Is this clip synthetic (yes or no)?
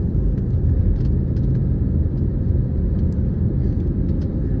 no